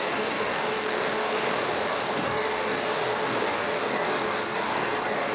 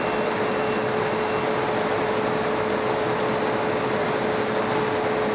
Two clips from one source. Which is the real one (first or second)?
second